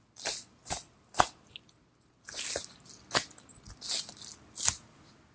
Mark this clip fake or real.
real